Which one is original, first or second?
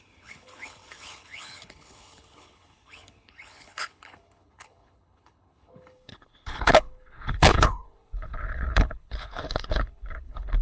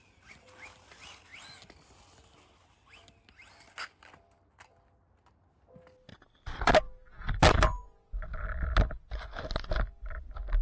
second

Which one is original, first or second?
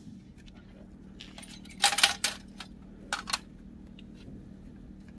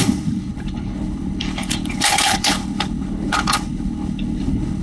first